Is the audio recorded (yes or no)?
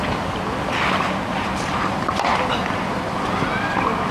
yes